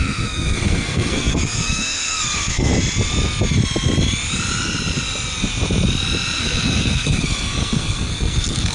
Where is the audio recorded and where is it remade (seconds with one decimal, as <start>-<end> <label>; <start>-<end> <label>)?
0.0-2.7 remade; 2.7-6.4 recorded; 6.4-8.7 remade